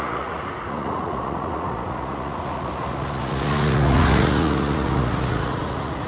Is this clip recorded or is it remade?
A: remade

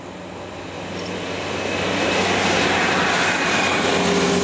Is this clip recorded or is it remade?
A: recorded